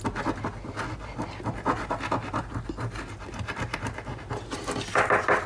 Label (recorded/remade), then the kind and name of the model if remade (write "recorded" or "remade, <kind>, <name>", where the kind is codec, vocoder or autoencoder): recorded